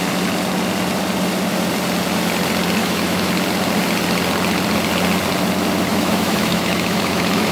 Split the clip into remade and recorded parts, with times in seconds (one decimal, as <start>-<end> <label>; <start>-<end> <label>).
0.0-2.8 recorded; 2.8-3.3 remade; 3.3-5.9 recorded; 5.9-7.5 remade